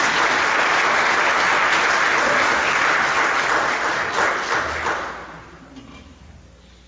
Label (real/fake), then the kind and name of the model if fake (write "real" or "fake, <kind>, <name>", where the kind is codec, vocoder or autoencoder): real